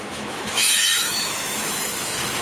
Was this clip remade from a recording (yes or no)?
yes